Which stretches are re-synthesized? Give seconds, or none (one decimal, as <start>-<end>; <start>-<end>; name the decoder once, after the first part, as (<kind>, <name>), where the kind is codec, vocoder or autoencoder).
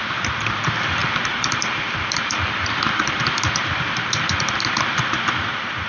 0.0-5.9 (vocoder, BigVGAN v2)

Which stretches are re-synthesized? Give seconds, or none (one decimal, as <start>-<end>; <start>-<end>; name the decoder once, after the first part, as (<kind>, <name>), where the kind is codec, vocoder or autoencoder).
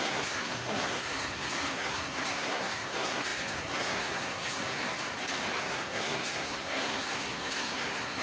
0.0-4.9 (codec, SNAC); 5.6-8.2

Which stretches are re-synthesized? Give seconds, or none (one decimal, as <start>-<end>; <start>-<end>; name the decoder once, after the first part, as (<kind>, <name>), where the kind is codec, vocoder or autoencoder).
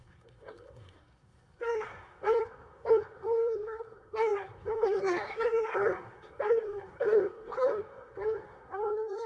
0.0-9.3 (codec, SNAC)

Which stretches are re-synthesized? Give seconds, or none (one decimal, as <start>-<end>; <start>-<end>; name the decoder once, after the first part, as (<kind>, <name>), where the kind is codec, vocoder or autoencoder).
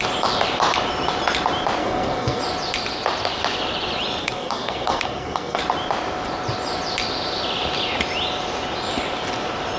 1.8-2.4 (codec, SNAC); 4.2-5.6